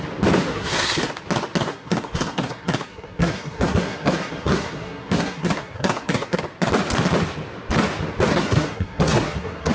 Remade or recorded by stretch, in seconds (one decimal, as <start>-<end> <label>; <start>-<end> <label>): 0.0-0.5 recorded; 0.5-1.1 remade; 1.1-1.7 recorded; 1.7-6.4 remade; 6.4-8.3 recorded; 8.3-9.7 remade